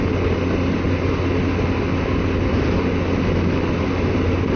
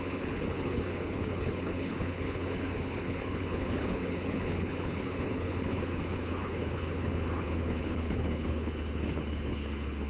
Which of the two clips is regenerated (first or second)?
second